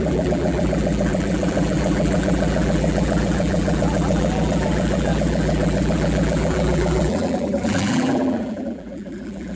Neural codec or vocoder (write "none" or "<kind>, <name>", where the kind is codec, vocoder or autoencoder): vocoder, BigVGAN v2